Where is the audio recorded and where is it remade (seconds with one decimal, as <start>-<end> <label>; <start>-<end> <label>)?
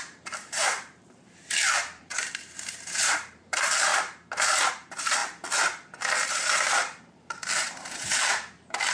0.0-5.2 remade; 5.2-6.3 recorded; 6.3-8.9 remade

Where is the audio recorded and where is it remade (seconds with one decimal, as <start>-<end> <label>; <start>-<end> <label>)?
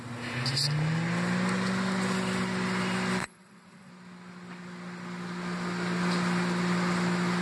0.0-3.2 recorded; 3.2-3.9 remade; 3.9-7.4 recorded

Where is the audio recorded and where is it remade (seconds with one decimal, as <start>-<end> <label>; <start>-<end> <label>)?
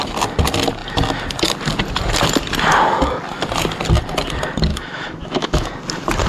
0.0-4.7 recorded; 4.7-5.7 remade; 5.7-6.3 recorded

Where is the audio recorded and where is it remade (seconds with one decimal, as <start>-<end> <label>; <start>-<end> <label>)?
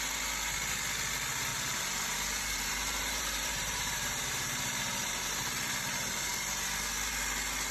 0.0-1.5 recorded; 1.5-5.4 remade; 5.4-7.7 recorded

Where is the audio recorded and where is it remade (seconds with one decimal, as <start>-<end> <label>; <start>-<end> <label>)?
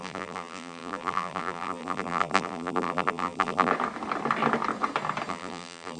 0.0-3.7 remade; 3.7-5.3 recorded; 5.3-6.0 remade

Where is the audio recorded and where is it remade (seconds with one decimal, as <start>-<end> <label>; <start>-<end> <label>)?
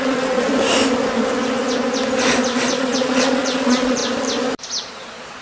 0.0-0.5 remade; 0.5-2.6 recorded; 2.6-4.0 remade; 4.0-4.8 recorded; 4.8-5.4 remade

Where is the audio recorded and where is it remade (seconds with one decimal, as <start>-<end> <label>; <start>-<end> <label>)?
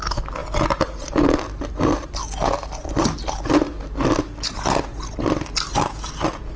0.0-6.6 recorded